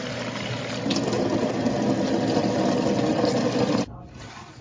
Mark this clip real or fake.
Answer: real